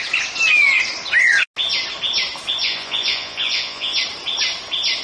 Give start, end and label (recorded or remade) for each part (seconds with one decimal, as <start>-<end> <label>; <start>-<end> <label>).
0.0-2.6 recorded; 2.6-4.0 remade; 4.0-5.0 recorded